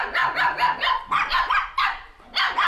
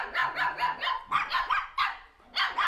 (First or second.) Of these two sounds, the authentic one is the second